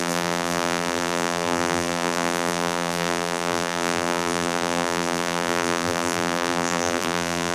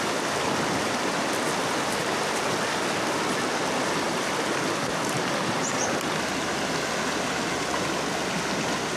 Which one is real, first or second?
second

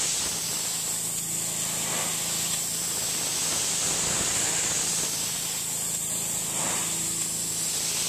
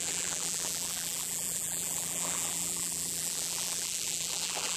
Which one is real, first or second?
first